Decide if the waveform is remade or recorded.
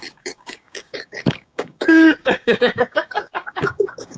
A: remade